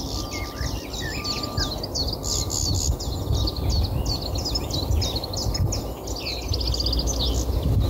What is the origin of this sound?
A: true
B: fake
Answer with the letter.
A